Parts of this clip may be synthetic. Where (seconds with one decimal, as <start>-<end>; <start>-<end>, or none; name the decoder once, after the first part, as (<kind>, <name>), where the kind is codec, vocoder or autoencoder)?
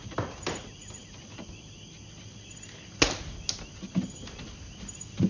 none